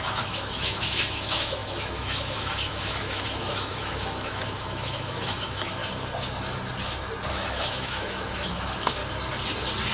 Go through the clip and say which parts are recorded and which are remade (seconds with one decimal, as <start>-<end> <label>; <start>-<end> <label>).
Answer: 0.0-5.8 remade; 5.8-7.3 recorded; 7.3-9.0 remade; 9.0-9.9 recorded